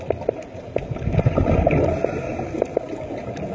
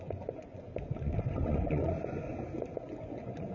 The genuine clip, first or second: first